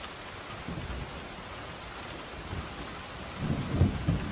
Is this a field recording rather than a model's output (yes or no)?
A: yes